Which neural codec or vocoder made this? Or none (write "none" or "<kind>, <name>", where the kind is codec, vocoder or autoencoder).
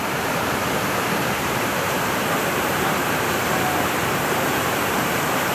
vocoder, BigVGAN v2